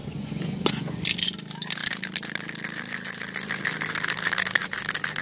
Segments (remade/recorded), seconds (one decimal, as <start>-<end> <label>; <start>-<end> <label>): 0.0-1.0 remade; 1.0-5.2 recorded